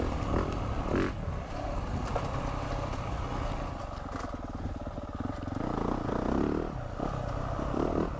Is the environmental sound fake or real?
real